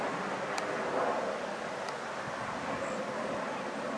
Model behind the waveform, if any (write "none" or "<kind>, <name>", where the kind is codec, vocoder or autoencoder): none